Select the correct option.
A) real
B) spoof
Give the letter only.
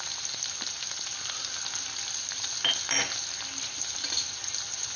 A